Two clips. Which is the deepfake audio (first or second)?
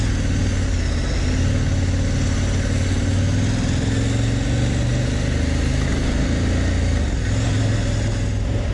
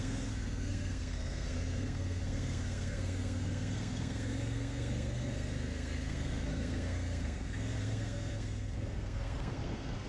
second